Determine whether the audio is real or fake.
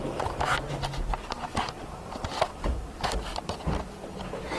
real